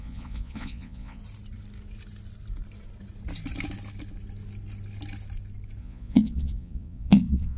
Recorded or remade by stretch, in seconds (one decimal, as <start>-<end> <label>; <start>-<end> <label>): 0.0-1.2 remade; 1.2-5.8 recorded; 5.8-7.6 remade